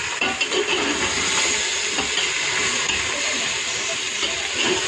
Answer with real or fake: real